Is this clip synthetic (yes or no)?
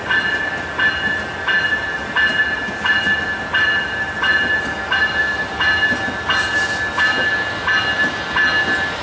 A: no